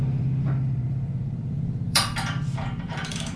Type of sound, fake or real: fake